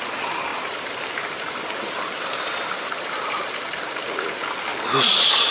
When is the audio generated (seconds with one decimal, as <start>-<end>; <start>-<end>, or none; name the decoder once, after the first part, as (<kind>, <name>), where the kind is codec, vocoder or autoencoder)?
0.5-3.8 (vocoder, BigVGAN v2)